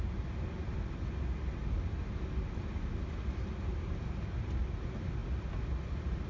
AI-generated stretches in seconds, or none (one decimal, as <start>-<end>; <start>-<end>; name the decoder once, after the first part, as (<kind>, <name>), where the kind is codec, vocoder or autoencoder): none